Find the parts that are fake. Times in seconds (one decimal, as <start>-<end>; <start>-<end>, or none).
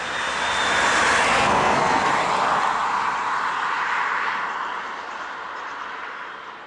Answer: 1.3-2.1